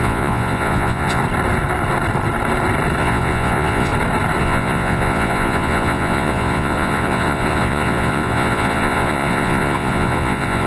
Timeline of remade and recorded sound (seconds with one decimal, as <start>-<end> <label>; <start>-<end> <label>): 0.0-1.2 remade; 1.2-3.0 recorded; 3.0-3.9 remade; 3.9-4.4 recorded; 4.4-10.7 remade